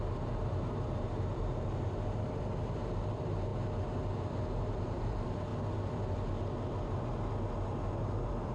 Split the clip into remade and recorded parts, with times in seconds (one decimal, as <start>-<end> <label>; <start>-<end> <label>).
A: 0.0-3.5 remade; 3.5-4.6 recorded; 4.6-5.5 remade; 5.5-7.9 recorded; 7.9-8.5 remade